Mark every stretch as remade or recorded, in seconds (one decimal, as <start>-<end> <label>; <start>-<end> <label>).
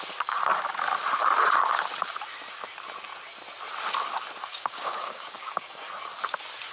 0.0-4.5 recorded; 4.5-5.9 remade; 5.9-6.7 recorded